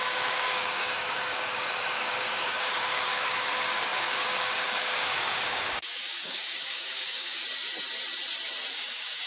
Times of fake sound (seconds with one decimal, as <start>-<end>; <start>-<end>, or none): 0.0-7.4; 8.7-9.3